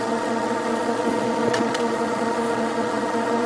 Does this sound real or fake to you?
fake